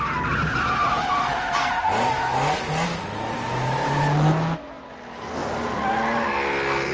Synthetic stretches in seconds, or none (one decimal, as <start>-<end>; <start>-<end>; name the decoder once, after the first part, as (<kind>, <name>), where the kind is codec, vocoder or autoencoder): 1.2-1.7 (codec, SNAC)